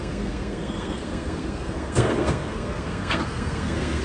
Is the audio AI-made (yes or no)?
yes